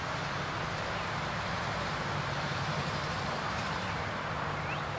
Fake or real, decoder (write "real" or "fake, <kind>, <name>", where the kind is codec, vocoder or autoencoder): fake, vocoder, BigVGAN v2